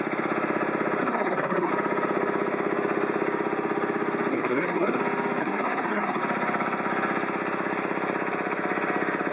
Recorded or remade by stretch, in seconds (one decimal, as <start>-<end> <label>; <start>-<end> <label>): 0.0-1.0 recorded; 1.0-1.7 remade; 1.7-4.3 recorded; 4.3-5.0 remade; 5.0-5.4 recorded; 5.4-6.2 remade; 6.2-9.3 recorded